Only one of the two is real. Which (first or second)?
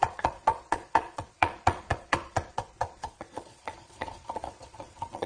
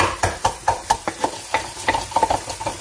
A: second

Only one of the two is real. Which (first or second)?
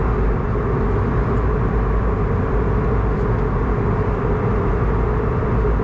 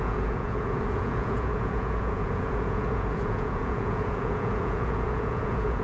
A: first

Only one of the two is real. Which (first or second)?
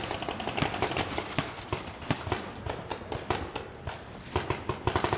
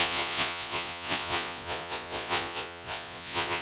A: first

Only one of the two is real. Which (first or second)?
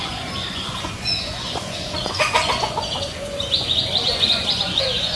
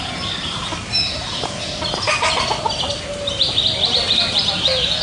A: second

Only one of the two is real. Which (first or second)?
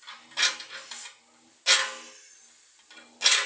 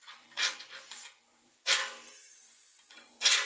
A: first